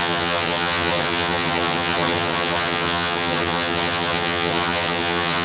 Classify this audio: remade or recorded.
remade